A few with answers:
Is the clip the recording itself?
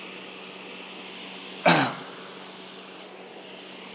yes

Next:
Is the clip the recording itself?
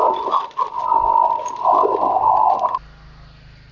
yes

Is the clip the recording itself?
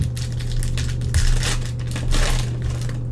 yes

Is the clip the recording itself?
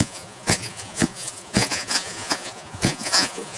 no